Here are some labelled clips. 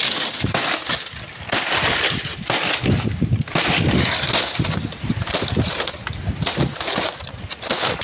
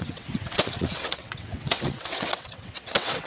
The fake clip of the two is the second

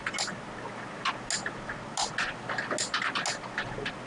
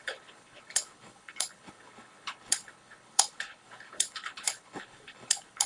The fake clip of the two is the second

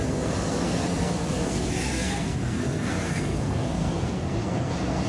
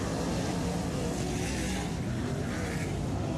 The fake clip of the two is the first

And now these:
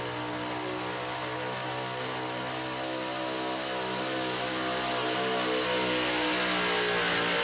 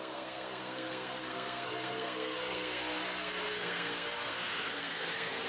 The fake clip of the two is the second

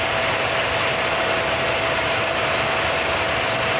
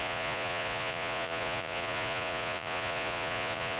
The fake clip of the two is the second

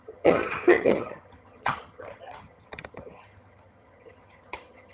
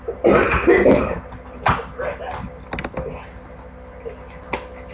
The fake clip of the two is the first